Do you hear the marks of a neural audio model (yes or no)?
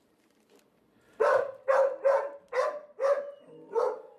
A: no